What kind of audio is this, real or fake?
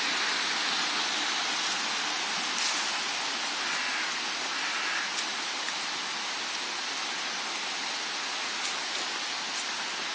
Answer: real